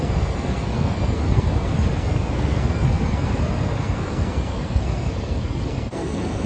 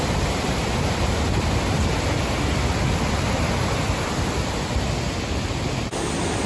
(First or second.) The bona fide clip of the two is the second